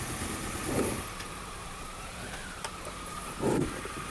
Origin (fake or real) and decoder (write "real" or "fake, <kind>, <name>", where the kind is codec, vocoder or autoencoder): real